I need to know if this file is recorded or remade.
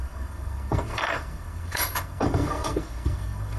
remade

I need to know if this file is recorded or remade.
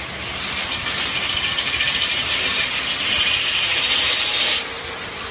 recorded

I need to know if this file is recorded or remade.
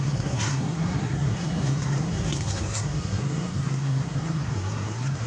remade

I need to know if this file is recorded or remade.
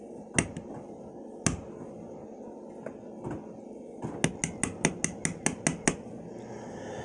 recorded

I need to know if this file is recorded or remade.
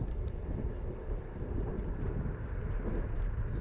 recorded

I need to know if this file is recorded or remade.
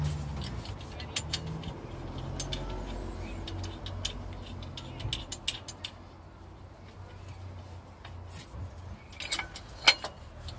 recorded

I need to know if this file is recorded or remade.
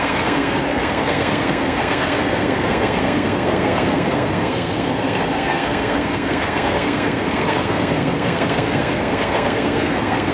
remade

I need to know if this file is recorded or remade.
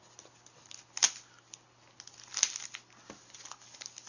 recorded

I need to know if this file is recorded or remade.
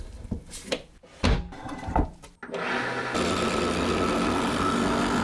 recorded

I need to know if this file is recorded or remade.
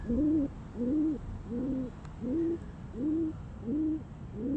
recorded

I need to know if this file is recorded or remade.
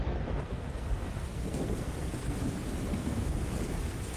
remade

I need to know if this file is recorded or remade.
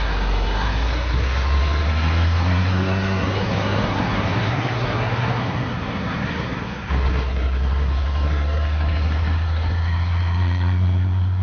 remade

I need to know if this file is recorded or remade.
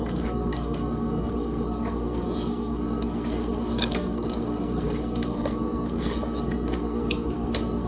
remade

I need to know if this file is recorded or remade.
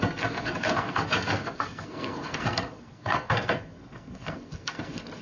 remade